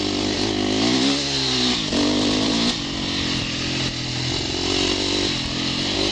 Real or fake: real